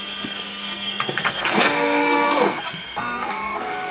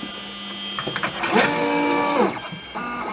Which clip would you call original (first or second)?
second